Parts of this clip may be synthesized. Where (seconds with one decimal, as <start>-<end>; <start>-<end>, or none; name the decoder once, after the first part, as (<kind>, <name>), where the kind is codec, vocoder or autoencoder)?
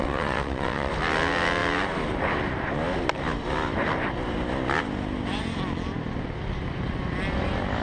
0.0-0.9 (vocoder, WaveNeXt)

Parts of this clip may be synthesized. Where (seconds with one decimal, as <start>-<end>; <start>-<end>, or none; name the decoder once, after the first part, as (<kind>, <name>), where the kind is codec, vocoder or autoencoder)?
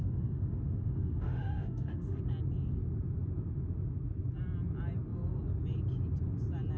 0.0-2.2 (autoencoder, DAC-VAE)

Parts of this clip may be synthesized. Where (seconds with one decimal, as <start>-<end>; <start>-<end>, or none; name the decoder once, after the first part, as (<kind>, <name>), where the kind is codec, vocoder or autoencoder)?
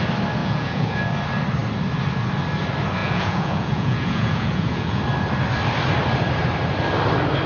0.4-1.0 (vocoder, Vocos); 3.0-5.0